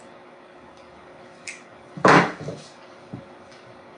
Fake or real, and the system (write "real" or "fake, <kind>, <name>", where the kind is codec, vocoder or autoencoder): fake, codec, DAC